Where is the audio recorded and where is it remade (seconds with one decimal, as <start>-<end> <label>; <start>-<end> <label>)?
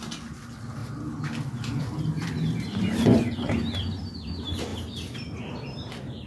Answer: 0.0-3.0 recorded; 3.0-3.5 remade; 3.5-6.3 recorded